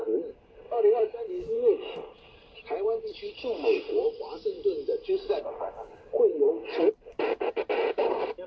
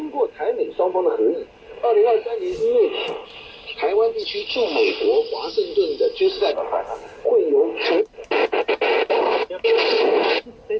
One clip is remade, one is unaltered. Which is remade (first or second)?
first